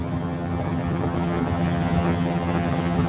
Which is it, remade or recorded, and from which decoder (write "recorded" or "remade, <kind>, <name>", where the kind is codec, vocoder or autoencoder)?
remade, vocoder, HiFi-GAN